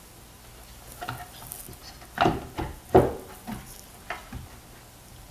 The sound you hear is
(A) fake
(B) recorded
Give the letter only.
B